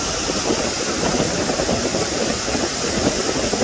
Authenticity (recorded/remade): recorded